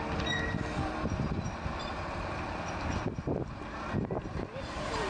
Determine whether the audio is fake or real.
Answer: real